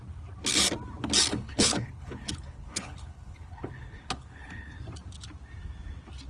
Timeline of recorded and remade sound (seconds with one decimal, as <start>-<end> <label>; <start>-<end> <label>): 0.0-1.3 recorded; 1.3-4.8 remade; 4.8-6.3 recorded